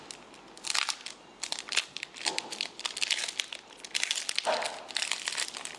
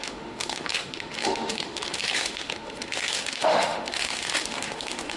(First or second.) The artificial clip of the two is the second